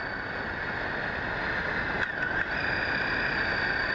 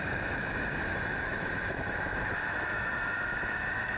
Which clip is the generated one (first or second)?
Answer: second